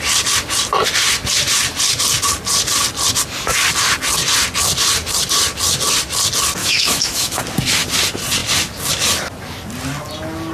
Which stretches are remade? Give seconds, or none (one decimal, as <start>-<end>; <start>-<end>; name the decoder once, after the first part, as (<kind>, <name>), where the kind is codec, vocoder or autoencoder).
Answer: 6.6-7.4 (autoencoder, DAC-VAE)